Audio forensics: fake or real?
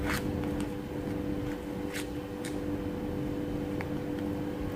real